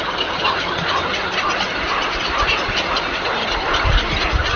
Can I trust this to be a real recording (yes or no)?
yes